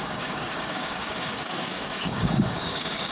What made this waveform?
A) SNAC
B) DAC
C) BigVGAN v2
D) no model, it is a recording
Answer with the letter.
B